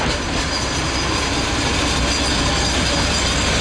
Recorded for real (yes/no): yes